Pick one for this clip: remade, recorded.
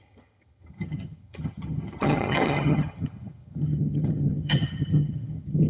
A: remade